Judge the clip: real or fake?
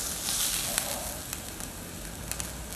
real